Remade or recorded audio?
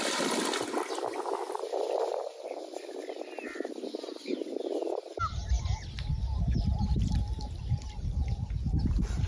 recorded